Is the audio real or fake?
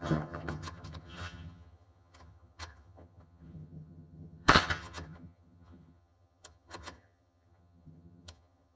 fake